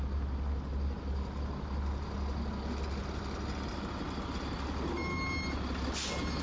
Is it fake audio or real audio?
real